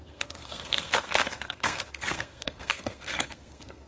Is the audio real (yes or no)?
no